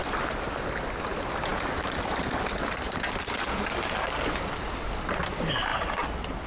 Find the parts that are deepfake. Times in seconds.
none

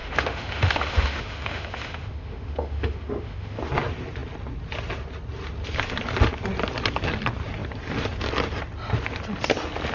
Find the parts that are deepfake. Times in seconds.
0.0-3.6 (autoencoder, DAC-VAE)

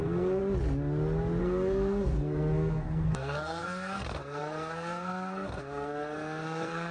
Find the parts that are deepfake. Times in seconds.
0.0-0.4 (codec, SNAC); 1.4-6.9